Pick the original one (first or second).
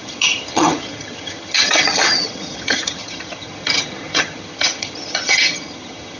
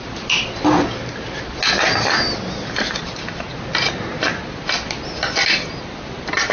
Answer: second